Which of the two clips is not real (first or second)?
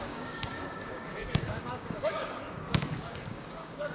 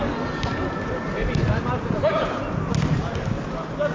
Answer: first